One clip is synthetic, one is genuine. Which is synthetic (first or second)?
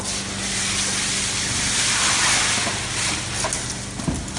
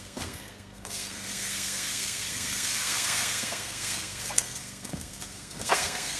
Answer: second